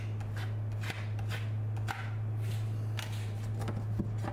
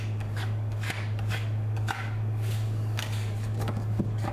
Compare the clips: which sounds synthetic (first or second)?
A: second